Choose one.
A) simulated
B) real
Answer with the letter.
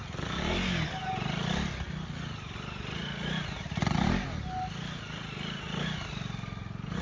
B